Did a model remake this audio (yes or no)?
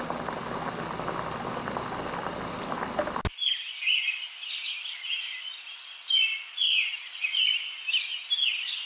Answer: no